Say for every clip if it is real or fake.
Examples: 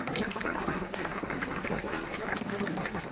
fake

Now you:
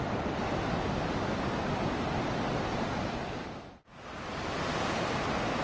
real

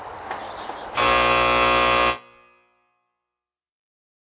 real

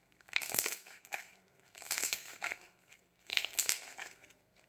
fake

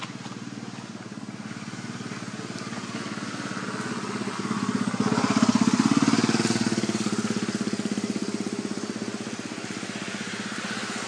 real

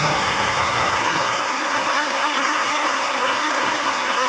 fake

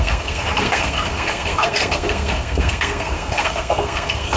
fake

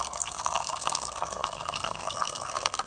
fake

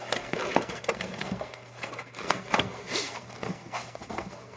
fake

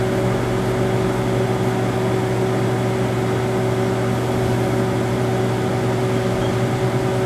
real